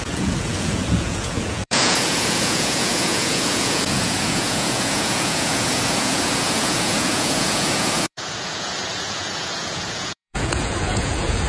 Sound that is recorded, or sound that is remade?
remade